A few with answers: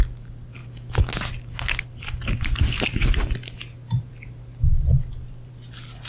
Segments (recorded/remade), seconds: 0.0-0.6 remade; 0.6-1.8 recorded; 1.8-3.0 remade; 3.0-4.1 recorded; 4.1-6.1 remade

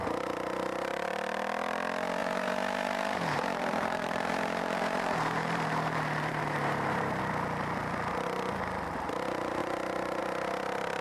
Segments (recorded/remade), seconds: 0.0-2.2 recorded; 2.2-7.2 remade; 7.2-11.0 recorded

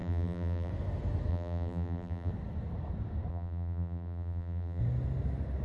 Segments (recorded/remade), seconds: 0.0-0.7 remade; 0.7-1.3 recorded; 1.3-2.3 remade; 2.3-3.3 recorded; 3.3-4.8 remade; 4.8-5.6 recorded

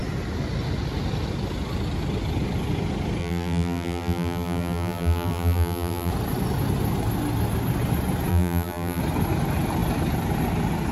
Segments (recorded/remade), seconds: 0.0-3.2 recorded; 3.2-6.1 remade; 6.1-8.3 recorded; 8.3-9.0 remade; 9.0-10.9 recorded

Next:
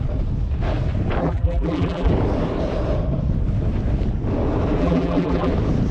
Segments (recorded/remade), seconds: 0.0-1.2 recorded; 1.2-2.1 remade; 2.1-4.8 recorded; 4.8-5.5 remade; 5.5-5.9 recorded

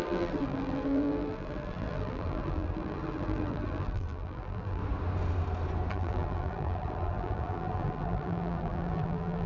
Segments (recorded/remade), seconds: 0.0-4.8 remade; 4.8-5.9 recorded; 5.9-9.5 remade

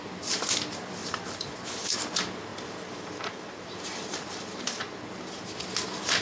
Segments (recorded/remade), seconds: 0.0-1.0 recorded; 1.0-1.5 remade; 1.5-2.5 recorded; 2.5-5.5 remade; 5.5-6.2 recorded

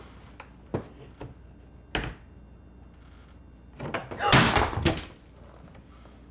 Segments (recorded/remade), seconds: 0.0-6.3 recorded